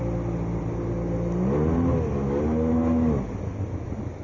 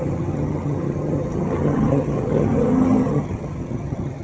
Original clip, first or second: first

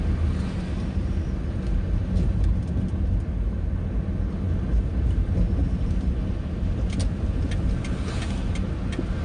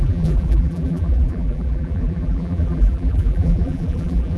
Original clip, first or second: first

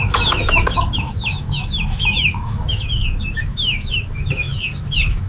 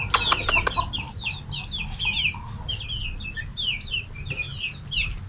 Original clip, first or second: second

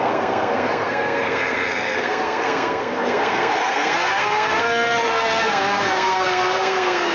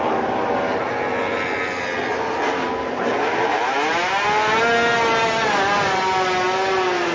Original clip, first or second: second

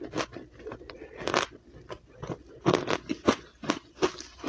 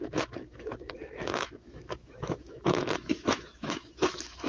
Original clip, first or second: first